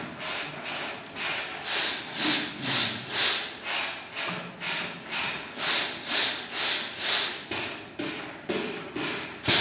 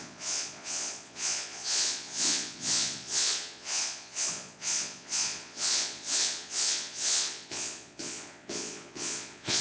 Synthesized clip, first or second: second